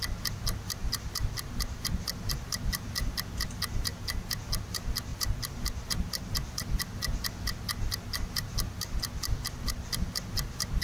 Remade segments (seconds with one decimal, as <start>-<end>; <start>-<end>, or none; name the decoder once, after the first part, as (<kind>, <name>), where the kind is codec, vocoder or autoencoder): none